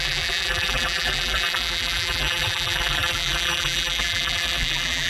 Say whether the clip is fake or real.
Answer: fake